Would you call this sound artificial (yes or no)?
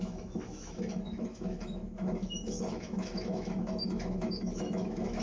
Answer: yes